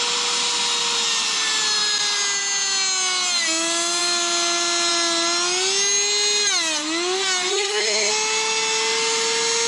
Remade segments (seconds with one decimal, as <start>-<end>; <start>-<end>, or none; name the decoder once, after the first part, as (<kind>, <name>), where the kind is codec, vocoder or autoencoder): 7.5-8.1 (codec, SNAC)

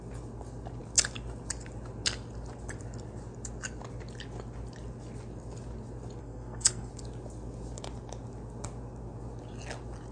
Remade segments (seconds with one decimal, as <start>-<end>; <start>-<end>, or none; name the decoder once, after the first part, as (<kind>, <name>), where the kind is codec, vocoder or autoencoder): 6.2-6.9 (codec, SNAC)

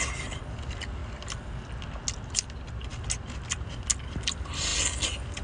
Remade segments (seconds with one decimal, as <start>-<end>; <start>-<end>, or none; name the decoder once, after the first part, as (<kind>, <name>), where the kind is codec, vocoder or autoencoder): none

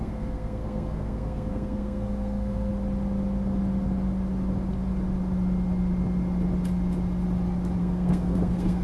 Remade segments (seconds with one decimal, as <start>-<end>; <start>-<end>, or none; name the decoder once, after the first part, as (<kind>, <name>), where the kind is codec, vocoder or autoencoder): 0.0-2.7 (codec, SNAC); 7.8-8.8

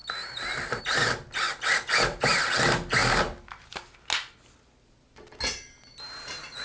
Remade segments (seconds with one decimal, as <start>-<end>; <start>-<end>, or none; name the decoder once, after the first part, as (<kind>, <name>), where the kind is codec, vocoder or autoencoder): none

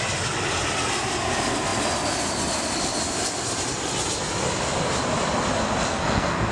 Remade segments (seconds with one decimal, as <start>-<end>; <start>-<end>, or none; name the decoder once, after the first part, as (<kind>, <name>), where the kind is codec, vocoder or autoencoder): 5.9-6.5 (codec, SNAC)